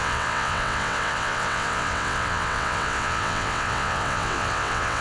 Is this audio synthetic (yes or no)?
yes